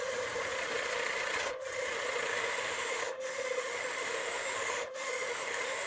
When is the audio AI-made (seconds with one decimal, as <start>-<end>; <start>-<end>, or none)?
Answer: 2.3-5.9